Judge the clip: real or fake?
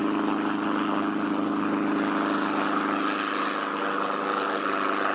real